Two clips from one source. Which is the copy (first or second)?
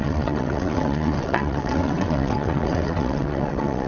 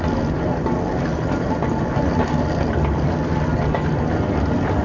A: first